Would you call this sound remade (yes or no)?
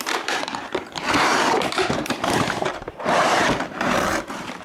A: yes